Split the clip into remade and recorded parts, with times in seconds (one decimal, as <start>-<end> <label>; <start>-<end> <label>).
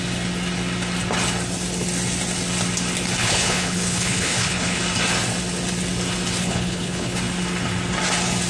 0.0-3.2 recorded; 3.2-4.8 remade; 4.8-6.4 recorded; 6.4-7.2 remade; 7.2-8.5 recorded